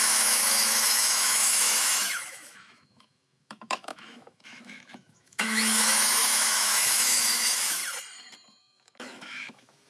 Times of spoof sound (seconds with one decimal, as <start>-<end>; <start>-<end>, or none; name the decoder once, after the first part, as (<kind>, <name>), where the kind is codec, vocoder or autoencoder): 0.0-7.8 (autoencoder, DAC-VAE); 8.6-9.9